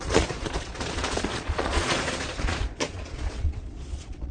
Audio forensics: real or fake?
fake